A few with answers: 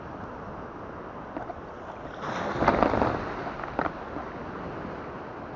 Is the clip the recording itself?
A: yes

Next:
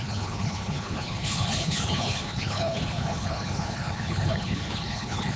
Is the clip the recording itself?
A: no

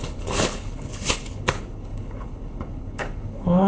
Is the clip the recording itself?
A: no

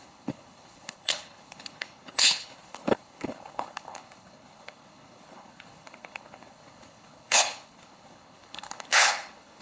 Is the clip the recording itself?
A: no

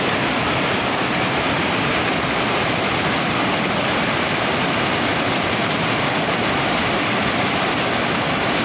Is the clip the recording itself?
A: yes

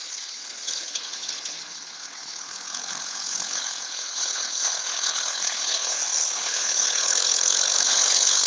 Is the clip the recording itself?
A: no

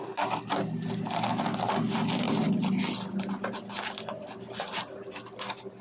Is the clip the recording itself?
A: yes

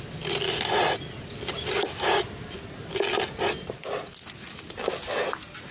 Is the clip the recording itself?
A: yes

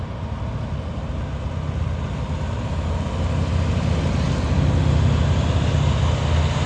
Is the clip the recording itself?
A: yes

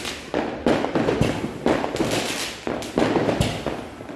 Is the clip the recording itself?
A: yes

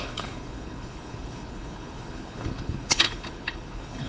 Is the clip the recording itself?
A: no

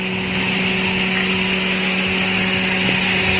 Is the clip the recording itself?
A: yes